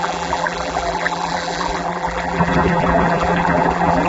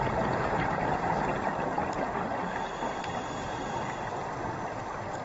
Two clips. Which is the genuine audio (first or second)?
second